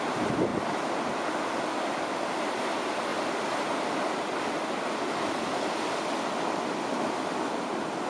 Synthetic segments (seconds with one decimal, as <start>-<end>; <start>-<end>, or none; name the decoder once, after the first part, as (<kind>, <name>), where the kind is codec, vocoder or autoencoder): none